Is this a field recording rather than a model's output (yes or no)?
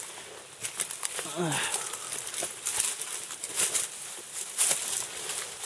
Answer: yes